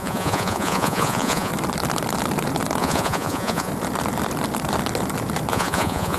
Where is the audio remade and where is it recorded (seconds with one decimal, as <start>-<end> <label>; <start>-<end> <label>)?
0.0-1.5 remade; 1.5-2.8 recorded; 2.8-3.7 remade; 3.7-5.5 recorded; 5.5-6.2 remade